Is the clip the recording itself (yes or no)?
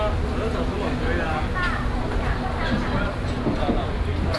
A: yes